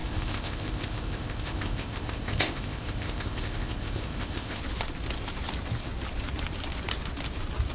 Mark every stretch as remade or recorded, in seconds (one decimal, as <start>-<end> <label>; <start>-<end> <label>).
0.0-4.6 remade; 4.6-7.7 recorded